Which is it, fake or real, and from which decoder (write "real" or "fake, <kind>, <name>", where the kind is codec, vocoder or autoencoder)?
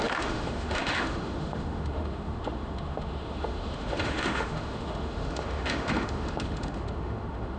fake, autoencoder, DAC-VAE